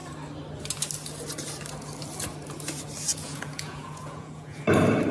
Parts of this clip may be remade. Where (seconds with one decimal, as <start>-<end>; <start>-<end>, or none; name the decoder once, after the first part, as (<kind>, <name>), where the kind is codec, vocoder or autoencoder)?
3.1-4.6 (vocoder, Vocos)